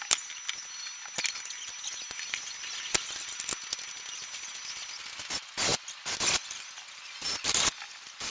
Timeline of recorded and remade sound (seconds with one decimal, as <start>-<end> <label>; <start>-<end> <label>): 0.0-8.3 recorded